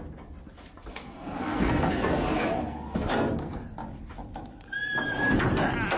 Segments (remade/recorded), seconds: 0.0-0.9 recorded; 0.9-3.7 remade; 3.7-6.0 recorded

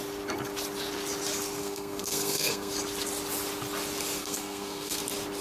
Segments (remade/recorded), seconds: 0.0-1.6 recorded; 1.6-2.7 remade; 2.7-4.2 recorded; 4.2-5.0 remade; 5.0-5.4 recorded

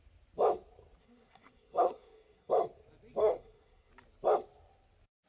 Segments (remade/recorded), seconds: 0.0-1.0 recorded; 1.0-2.5 remade; 2.5-3.2 recorded; 3.2-3.9 remade; 3.9-5.3 recorded

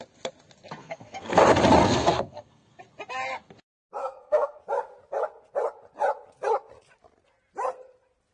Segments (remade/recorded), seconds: 0.0-0.8 recorded; 0.8-1.4 remade; 1.4-1.8 recorded; 1.8-2.8 remade; 2.8-4.0 recorded; 4.0-4.6 remade; 4.6-8.3 recorded

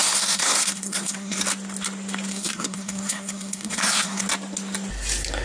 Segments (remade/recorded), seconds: 0.0-1.4 remade; 1.4-2.3 recorded; 2.3-4.2 remade; 4.2-5.4 recorded